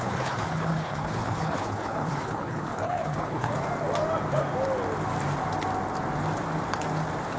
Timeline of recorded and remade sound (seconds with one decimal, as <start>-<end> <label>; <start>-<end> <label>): 0.0-3.5 remade; 3.5-7.4 recorded